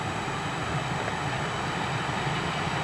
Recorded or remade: recorded